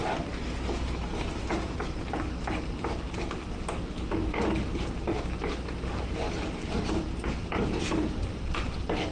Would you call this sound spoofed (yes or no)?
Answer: no